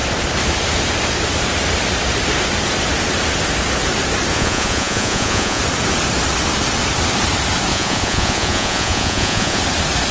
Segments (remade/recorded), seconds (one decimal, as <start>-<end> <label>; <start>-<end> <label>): 0.0-4.3 recorded; 4.3-5.6 remade; 5.6-7.7 recorded; 7.7-9.6 remade; 9.6-10.1 recorded